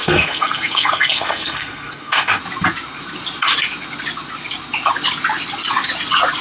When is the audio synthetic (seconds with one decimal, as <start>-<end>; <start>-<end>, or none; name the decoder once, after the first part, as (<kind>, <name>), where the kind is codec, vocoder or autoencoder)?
0.0-2.4 (codec, SNAC)